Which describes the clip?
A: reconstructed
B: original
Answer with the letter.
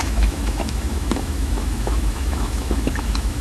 A